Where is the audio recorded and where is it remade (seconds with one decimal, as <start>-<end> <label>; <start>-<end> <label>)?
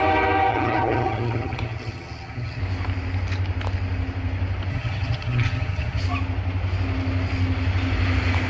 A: 0.0-0.5 recorded; 0.5-2.6 remade; 2.6-4.7 recorded; 4.7-6.0 remade; 6.0-8.5 recorded